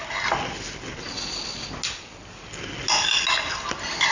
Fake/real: real